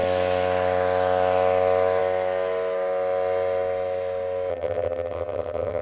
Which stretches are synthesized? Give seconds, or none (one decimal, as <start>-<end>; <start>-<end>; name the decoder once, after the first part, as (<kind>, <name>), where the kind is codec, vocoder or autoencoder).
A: 4.5-5.8 (vocoder, HiFi-GAN)